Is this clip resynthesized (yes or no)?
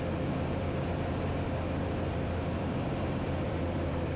yes